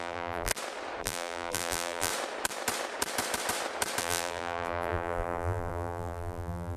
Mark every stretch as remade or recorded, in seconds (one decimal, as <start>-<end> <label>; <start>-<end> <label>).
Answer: 0.0-0.5 remade; 0.5-1.0 recorded; 1.0-2.1 remade; 2.1-4.0 recorded; 4.0-6.8 remade